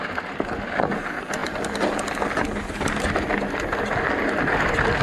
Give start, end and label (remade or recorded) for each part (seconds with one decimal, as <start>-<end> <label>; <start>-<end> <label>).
0.0-5.0 recorded